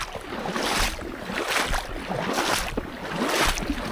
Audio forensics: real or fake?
real